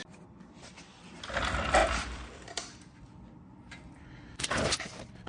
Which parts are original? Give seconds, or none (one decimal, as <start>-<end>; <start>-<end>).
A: 0.7-1.4